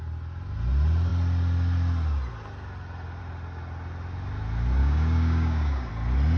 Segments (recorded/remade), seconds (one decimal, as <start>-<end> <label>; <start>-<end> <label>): 0.0-4.8 recorded; 4.8-5.9 remade; 5.9-6.4 recorded